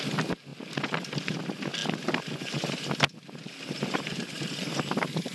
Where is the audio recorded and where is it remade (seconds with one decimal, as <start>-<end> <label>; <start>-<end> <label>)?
0.0-5.3 recorded